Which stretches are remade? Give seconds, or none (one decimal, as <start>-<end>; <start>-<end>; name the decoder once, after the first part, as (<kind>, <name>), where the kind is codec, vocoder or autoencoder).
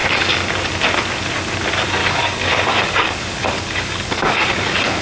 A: 2.0-5.0 (codec, DAC)